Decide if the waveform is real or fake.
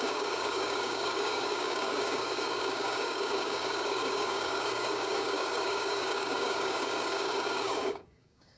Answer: fake